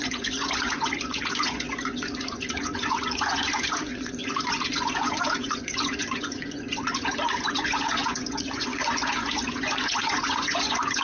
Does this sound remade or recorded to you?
remade